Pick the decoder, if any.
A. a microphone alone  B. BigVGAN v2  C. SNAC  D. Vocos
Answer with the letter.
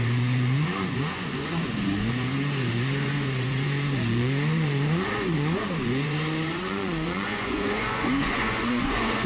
D